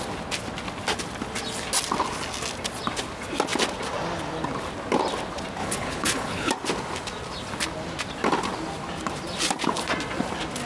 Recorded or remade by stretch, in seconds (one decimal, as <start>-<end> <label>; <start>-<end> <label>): 0.0-5.6 recorded; 5.6-6.5 remade; 6.5-10.7 recorded